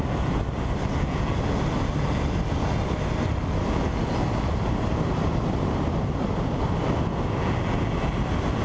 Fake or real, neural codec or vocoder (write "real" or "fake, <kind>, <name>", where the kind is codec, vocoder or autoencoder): real